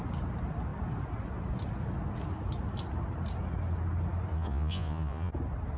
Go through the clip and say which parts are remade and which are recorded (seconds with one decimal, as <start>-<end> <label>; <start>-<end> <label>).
0.0-4.3 recorded; 4.3-5.3 remade; 5.3-5.8 recorded